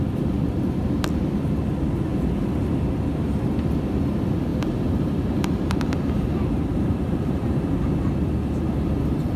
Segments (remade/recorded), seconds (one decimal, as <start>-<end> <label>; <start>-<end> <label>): 0.0-4.5 recorded; 4.5-7.6 remade; 7.6-9.4 recorded